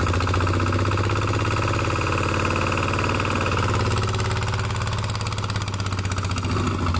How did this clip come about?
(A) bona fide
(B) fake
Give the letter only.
A